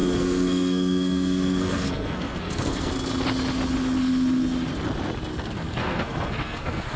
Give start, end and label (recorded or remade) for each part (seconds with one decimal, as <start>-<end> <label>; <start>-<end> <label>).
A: 0.0-2.9 remade; 2.9-5.3 recorded; 5.3-7.0 remade